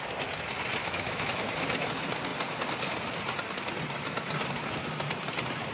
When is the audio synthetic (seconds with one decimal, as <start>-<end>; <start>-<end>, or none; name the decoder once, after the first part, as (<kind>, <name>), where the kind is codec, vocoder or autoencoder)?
0.8-1.5 (autoencoder, DAC-VAE)